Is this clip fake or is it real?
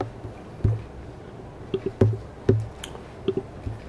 real